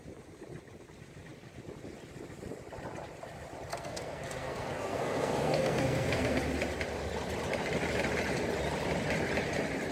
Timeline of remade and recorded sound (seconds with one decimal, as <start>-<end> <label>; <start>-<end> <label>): 0.0-3.7 recorded; 3.7-6.4 remade; 6.4-9.9 recorded